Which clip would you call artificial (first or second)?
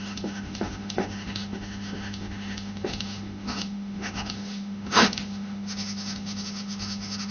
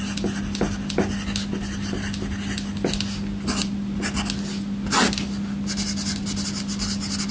first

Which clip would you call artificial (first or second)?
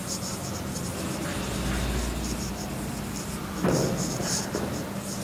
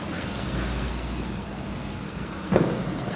second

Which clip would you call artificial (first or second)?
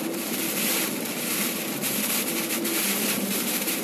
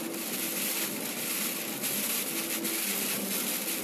first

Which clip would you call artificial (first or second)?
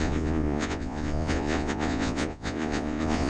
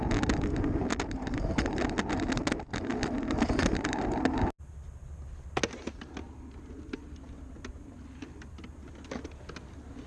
first